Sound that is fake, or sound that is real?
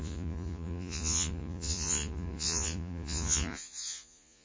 fake